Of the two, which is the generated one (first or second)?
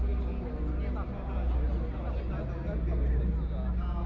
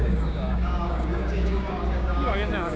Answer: second